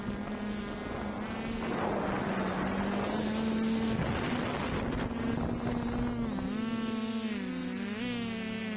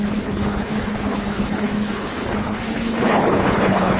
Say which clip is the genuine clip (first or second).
first